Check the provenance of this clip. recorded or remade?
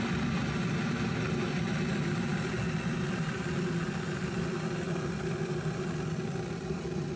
recorded